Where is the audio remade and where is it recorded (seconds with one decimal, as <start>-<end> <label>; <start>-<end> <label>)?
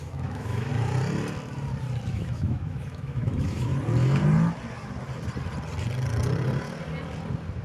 0.0-0.7 remade; 0.7-2.1 recorded; 2.1-3.7 remade; 3.7-7.6 recorded